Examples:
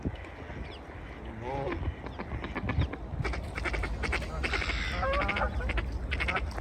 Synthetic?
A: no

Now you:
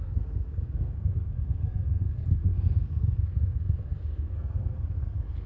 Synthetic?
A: yes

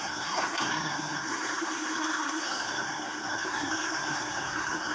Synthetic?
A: yes